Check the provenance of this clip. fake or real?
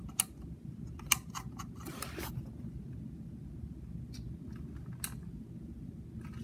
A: real